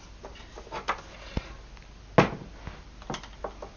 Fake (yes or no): no